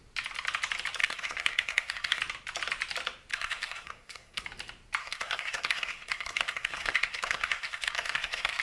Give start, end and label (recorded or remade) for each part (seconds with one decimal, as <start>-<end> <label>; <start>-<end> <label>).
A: 0.0-1.0 recorded; 1.0-2.2 remade; 2.2-3.3 recorded; 3.3-4.4 remade; 4.4-5.0 recorded; 5.0-8.6 remade